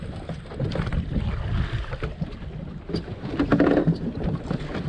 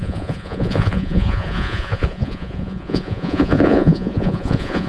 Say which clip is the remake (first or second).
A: second